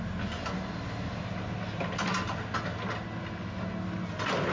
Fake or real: real